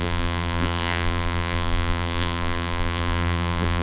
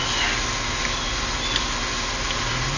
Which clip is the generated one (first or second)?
first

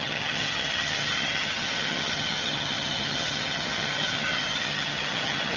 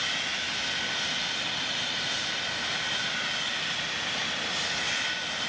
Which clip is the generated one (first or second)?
first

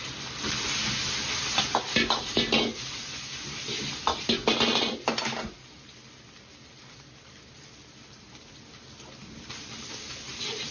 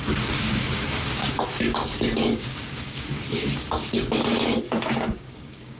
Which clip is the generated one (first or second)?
second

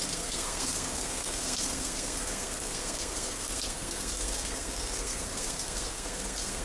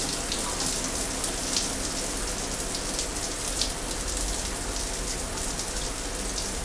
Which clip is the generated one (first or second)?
first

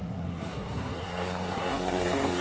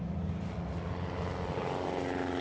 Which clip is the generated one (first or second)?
first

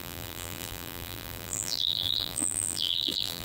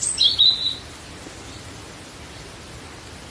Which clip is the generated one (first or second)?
first